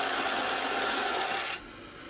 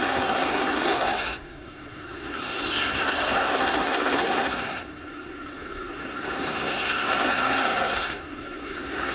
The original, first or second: first